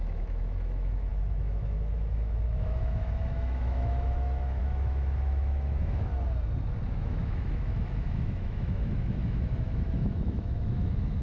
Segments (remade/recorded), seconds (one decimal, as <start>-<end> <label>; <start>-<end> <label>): 0.0-6.1 remade; 6.1-6.9 recorded; 6.9-11.2 remade

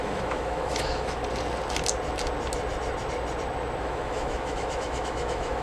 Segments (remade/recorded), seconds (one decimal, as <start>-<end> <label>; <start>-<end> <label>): 0.0-1.2 remade; 1.2-3.8 recorded; 3.8-5.6 remade

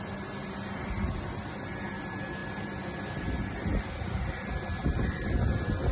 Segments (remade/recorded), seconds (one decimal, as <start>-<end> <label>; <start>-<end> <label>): 0.0-5.9 recorded

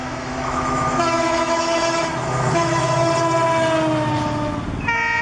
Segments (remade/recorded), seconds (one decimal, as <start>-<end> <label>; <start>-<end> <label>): 0.0-3.1 remade; 3.1-5.2 recorded